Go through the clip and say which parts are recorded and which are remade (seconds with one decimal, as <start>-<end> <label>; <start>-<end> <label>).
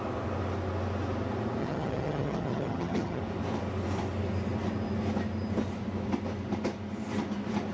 0.0-1.6 recorded; 1.6-3.2 remade; 3.2-7.7 recorded